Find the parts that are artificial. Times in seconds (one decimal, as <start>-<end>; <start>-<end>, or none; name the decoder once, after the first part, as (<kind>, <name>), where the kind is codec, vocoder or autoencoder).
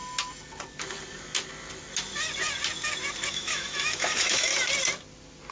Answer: 3.3-4.5 (autoencoder, DAC-VAE)